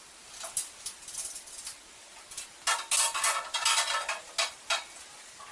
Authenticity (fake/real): real